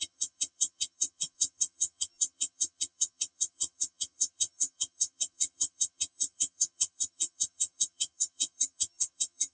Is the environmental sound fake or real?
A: fake